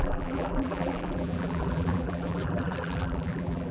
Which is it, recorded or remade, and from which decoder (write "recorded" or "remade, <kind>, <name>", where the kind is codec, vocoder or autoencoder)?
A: remade, vocoder, BigVGAN v2